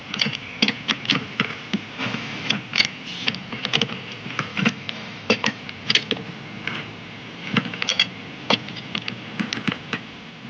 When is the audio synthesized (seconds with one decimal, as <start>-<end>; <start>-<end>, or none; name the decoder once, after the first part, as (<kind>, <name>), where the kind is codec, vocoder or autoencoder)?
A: 2.0-2.5 (autoencoder, DAC-VAE); 4.5-5.6